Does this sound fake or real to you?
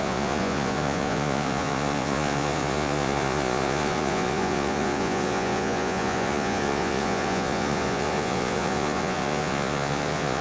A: fake